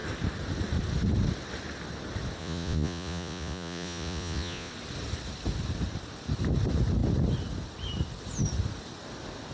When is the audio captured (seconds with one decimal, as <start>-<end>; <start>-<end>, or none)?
0.0-2.4; 4.7-9.5